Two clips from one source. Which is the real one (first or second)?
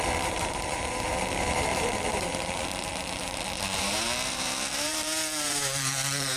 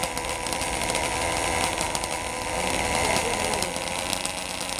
second